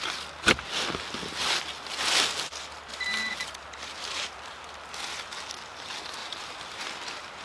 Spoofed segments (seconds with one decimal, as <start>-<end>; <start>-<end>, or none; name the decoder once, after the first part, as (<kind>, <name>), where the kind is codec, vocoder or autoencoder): 2.9-4.5 (vocoder, BigVGAN v2); 6.2-7.4